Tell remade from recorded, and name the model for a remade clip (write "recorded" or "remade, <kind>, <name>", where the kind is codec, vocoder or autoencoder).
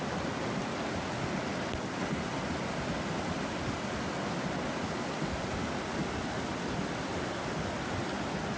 recorded